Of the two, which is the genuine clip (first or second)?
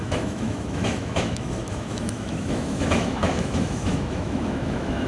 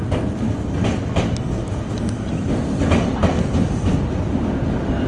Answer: second